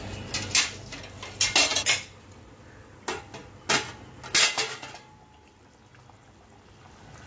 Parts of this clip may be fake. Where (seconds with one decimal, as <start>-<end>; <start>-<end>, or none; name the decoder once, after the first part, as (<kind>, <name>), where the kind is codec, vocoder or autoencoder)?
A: none